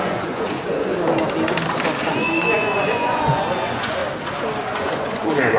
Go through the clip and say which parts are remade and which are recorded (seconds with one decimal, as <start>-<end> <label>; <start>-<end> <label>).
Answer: 0.0-0.9 remade; 0.9-2.1 recorded; 2.1-4.0 remade; 4.0-4.6 recorded; 4.6-5.6 remade